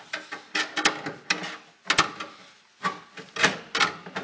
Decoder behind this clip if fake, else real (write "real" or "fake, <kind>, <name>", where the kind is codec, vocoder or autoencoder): real